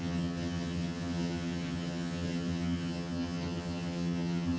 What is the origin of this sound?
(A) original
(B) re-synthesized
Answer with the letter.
B